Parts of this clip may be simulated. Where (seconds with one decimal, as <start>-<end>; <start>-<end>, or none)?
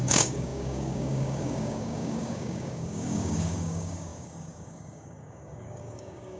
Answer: 0.0-6.4